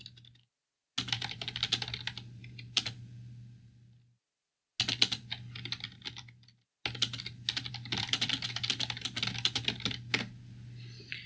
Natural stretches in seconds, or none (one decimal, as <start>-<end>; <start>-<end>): 0.0-11.3